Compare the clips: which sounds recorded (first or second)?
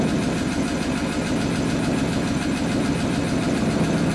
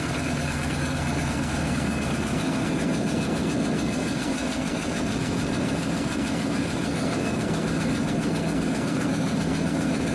first